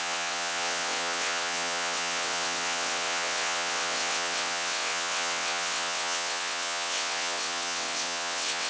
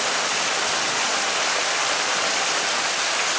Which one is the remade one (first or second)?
first